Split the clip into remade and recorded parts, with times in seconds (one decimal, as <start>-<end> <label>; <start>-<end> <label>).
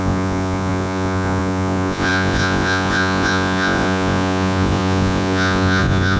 0.0-6.2 remade